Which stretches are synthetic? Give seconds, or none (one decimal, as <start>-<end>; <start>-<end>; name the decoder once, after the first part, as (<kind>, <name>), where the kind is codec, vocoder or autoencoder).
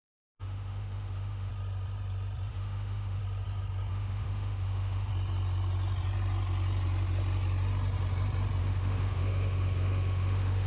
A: 0.0-1.5 (autoencoder, DAC-VAE); 2.5-3.2; 3.9-5.1; 8.6-10.7